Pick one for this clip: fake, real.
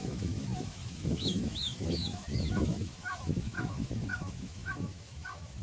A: fake